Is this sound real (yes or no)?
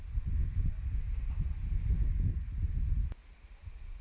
yes